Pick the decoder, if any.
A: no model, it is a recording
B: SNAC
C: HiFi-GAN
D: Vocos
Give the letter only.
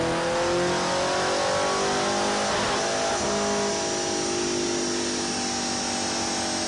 A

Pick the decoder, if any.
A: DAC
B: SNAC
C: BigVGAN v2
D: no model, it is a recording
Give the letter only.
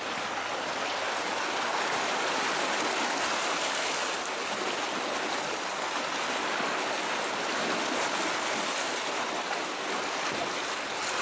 D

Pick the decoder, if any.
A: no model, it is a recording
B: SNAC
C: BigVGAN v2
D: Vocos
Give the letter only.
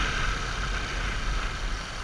A